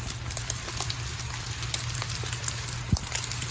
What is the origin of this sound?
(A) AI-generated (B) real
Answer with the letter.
B